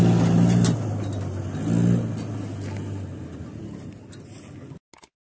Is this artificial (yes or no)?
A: no